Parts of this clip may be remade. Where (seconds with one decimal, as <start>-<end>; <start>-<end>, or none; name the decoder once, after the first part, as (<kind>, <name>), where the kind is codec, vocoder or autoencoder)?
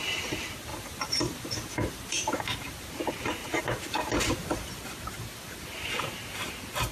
0.7-2.4 (vocoder, BigVGAN v2); 3.4-4.7